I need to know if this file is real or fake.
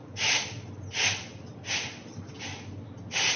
real